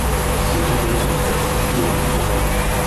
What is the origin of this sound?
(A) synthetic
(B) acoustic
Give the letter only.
B